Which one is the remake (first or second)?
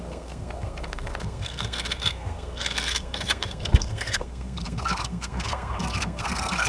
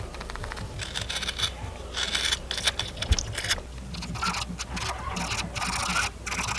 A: first